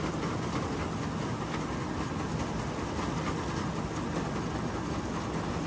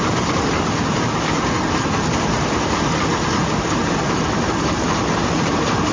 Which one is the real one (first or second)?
first